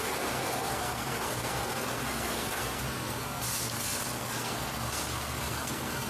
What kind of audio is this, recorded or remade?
remade